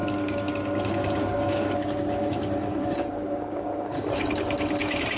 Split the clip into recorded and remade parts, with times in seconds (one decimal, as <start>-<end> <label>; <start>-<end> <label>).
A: 0.0-0.5 remade; 0.5-1.2 recorded; 1.2-4.1 remade; 4.1-5.2 recorded